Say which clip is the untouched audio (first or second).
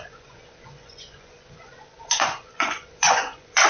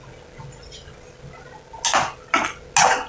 second